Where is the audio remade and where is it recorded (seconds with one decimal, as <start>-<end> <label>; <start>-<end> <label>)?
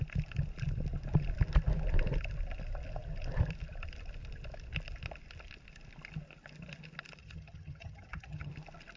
0.0-7.2 recorded; 7.2-8.5 remade; 8.5-9.0 recorded